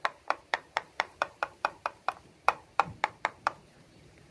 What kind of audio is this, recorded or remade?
remade